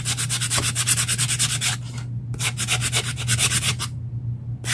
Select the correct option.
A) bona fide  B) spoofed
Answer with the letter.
A